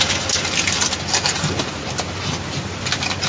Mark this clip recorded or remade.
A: recorded